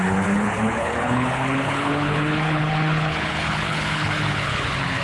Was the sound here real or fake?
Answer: fake